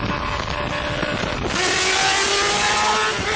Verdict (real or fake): real